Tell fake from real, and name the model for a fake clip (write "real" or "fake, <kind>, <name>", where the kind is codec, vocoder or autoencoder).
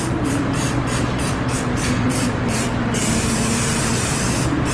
fake, vocoder, BigVGAN v2